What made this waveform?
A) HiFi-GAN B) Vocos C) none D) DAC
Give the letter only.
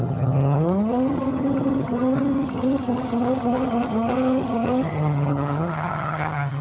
A